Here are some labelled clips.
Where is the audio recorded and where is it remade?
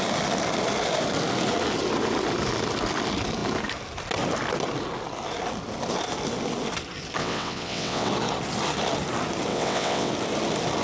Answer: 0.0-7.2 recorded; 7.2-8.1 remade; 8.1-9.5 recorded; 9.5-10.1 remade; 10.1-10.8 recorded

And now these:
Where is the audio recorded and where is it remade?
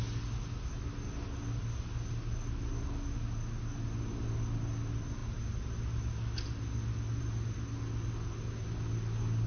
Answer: 0.0-9.5 recorded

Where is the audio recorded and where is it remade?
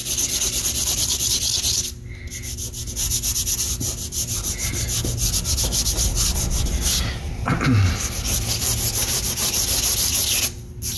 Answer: 0.0-11.0 recorded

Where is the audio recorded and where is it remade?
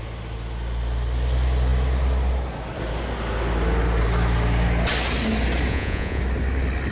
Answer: 0.0-5.7 recorded; 5.7-6.2 remade; 6.2-6.9 recorded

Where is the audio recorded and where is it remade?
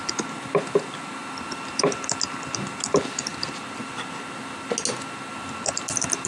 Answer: 0.0-6.3 recorded